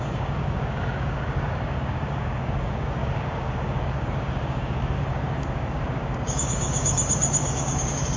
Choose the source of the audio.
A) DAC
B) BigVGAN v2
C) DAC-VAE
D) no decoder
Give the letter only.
A